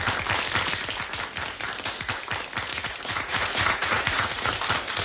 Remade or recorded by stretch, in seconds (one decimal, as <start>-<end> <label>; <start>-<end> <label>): 0.0-2.7 recorded; 2.7-4.5 remade; 4.5-5.0 recorded